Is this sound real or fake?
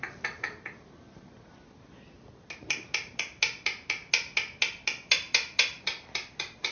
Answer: real